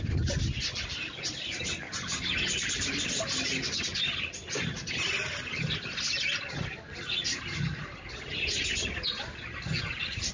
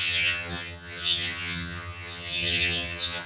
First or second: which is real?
first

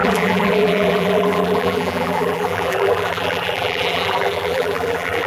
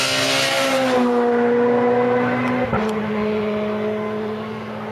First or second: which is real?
second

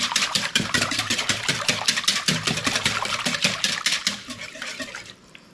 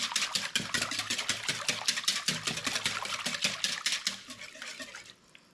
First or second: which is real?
second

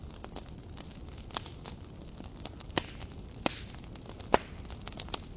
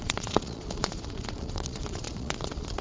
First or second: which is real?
first